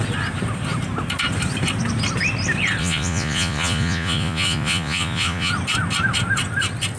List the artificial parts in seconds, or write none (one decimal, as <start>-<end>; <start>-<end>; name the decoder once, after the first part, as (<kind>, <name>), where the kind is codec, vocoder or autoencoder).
2.8-5.5 (vocoder, Vocos)